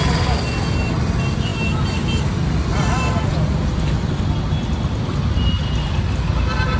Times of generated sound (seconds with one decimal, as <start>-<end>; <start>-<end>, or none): none